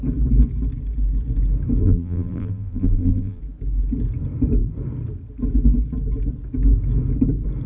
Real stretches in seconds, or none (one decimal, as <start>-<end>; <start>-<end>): 0.0-1.8; 3.4-7.7